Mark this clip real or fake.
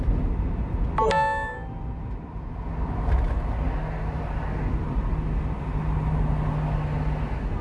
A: real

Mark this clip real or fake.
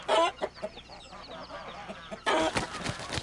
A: real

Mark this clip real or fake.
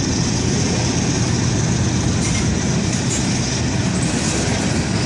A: real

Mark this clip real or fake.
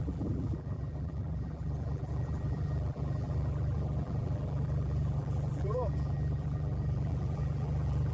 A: fake